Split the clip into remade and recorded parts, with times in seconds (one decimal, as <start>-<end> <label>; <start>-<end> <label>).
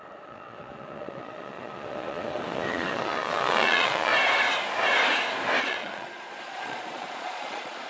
0.0-4.1 remade; 4.1-5.6 recorded; 5.6-7.9 remade